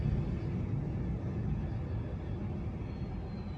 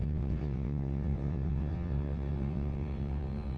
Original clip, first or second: first